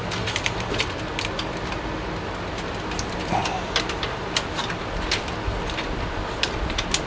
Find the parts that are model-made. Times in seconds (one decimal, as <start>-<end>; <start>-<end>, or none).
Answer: none